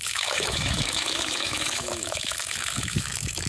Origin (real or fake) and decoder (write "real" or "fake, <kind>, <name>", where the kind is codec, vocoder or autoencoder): fake, autoencoder, DAC-VAE